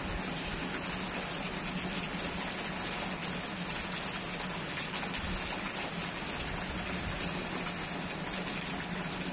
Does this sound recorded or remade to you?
recorded